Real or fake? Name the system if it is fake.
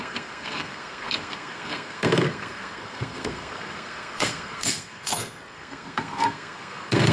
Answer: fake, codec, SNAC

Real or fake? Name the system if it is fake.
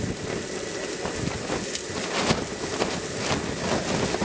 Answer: real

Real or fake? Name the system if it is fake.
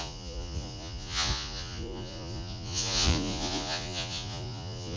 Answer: fake, vocoder, Vocos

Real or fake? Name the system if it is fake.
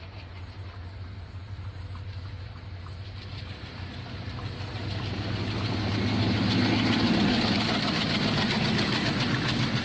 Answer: real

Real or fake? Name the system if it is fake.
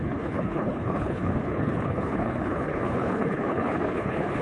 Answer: fake, codec, HILCodec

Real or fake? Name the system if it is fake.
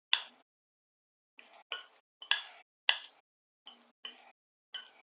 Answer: real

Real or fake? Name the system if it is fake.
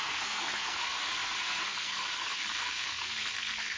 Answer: fake, codec, SNAC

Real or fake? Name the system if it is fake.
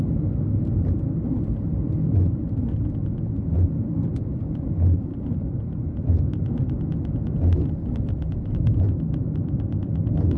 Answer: real